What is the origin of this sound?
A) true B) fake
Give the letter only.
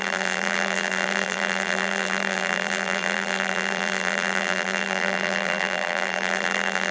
B